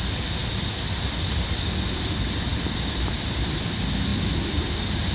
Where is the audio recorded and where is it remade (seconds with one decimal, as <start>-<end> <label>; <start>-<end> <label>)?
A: 0.0-2.5 recorded; 2.5-3.3 remade; 3.3-5.1 recorded

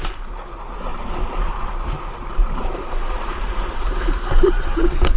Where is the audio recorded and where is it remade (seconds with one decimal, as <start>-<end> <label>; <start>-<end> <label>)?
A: 0.0-0.9 recorded; 0.9-1.8 remade; 1.8-2.4 recorded; 2.4-5.2 remade

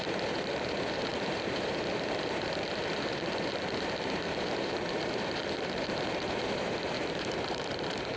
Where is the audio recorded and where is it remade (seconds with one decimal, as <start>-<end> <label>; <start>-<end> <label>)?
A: 0.0-8.2 remade

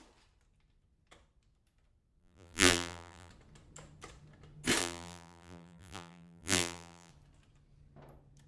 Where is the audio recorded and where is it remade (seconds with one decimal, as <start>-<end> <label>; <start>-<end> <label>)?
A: 0.0-2.2 recorded; 2.2-3.3 remade; 3.3-4.8 recorded; 4.8-7.1 remade; 7.1-8.5 recorded

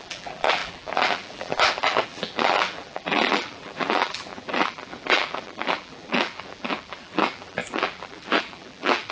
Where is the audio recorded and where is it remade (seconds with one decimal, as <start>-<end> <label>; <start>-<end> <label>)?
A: 0.0-9.1 remade

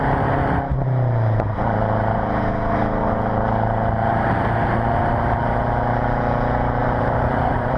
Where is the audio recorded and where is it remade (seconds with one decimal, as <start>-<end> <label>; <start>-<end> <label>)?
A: 0.0-6.8 recorded; 6.8-7.8 remade